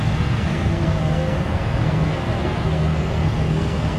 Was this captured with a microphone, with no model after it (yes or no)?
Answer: no